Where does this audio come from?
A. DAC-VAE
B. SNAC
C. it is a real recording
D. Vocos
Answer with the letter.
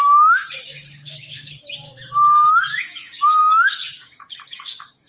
A